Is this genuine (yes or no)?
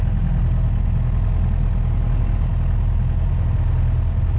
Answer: yes